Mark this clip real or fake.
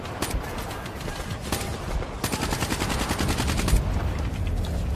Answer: real